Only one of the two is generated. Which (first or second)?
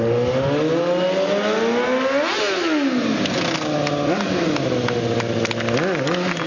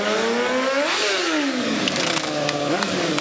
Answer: second